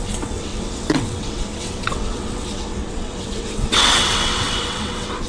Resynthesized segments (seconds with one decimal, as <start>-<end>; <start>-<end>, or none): 0.0-5.3